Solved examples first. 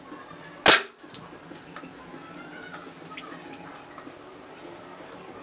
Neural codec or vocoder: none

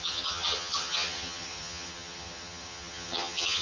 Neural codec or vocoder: vocoder, HiFi-GAN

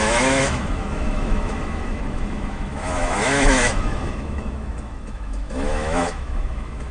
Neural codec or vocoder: autoencoder, DAC-VAE